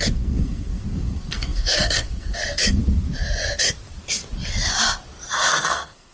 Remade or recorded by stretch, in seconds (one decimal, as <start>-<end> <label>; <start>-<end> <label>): 0.0-2.8 remade; 2.8-5.5 recorded; 5.5-6.1 remade